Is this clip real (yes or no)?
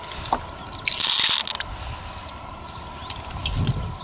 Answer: yes